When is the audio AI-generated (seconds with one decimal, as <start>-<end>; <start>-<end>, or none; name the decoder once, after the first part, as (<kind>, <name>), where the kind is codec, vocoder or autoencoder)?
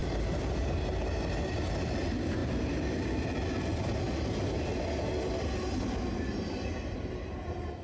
none